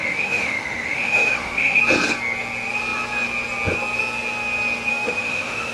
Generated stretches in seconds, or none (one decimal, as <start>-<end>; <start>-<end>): 0.0-1.8; 4.9-5.7